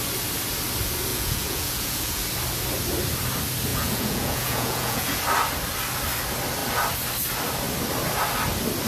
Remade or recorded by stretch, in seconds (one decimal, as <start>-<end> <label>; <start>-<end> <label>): 0.0-1.1 recorded; 1.1-2.2 remade; 2.2-3.7 recorded; 3.7-5.2 remade; 5.2-8.9 recorded